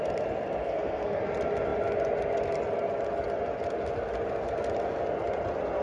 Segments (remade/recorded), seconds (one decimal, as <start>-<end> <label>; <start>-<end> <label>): 0.0-0.6 recorded; 0.6-1.2 remade; 1.2-5.8 recorded